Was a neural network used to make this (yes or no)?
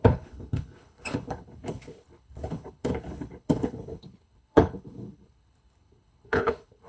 yes